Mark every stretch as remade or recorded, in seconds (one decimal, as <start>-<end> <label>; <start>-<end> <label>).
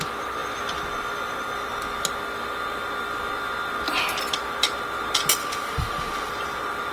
0.0-5.4 recorded; 5.4-6.3 remade; 6.3-6.9 recorded